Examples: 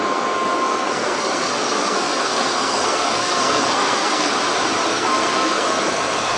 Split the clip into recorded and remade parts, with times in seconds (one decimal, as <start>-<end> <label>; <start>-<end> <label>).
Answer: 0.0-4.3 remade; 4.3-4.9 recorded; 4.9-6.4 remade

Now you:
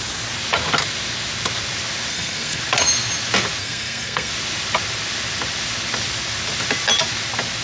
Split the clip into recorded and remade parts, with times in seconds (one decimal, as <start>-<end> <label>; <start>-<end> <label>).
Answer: 0.0-2.1 recorded; 2.1-2.6 remade; 2.6-3.6 recorded; 3.6-4.3 remade; 4.3-7.6 recorded

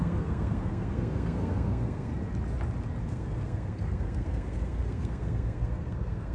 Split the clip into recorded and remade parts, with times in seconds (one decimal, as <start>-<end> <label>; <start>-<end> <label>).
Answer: 0.0-2.1 remade; 2.1-3.0 recorded; 3.0-6.3 remade

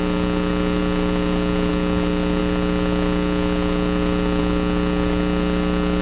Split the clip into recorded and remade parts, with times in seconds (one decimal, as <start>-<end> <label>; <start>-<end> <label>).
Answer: 0.0-6.0 recorded

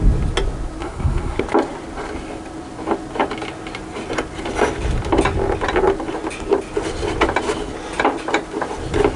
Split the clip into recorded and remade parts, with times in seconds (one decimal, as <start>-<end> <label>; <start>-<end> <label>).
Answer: 0.0-0.8 recorded; 0.8-1.4 remade; 1.4-9.2 recorded

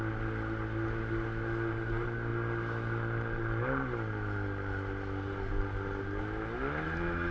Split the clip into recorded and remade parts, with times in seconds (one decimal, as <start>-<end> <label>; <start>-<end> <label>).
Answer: 0.0-7.3 recorded

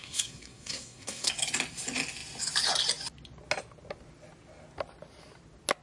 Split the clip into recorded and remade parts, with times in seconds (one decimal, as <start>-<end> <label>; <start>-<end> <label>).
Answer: 0.0-1.3 remade; 1.3-5.8 recorded

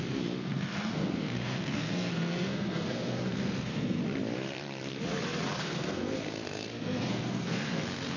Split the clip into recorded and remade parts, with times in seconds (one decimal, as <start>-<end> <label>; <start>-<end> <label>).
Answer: 0.0-4.0 remade; 4.0-5.6 recorded; 5.6-8.2 remade